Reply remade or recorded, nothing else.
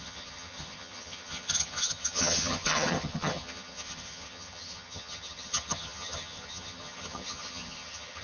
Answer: remade